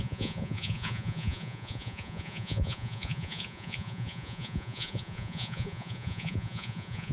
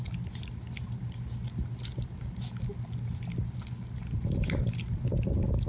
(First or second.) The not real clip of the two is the first